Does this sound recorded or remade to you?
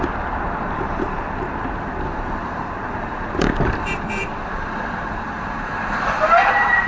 remade